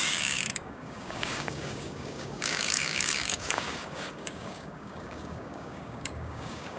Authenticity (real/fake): fake